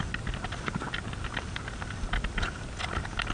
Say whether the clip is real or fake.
real